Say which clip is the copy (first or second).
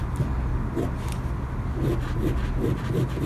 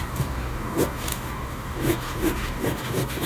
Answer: second